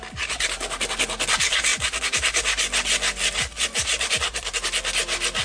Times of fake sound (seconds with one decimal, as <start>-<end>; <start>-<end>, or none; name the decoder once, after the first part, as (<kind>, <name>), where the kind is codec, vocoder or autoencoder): none